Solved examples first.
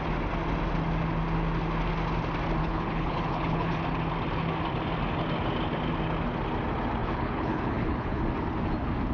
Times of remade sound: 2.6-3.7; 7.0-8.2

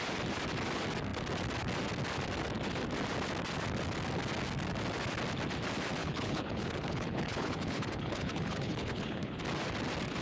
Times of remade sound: 6.0-9.4